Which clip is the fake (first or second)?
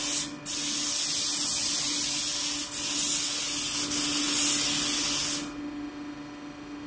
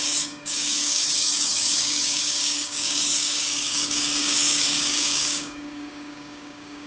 second